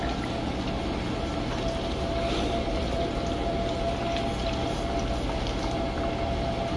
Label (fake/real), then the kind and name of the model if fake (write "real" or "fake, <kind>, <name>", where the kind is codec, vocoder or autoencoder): real